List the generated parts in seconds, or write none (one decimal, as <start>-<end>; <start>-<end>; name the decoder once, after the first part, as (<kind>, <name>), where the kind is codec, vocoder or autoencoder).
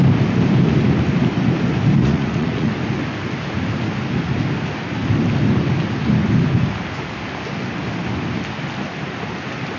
2.0-2.7 (vocoder, Vocos)